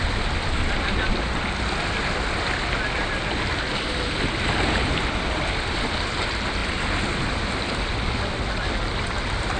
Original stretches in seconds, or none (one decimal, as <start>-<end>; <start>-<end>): 0.0-9.6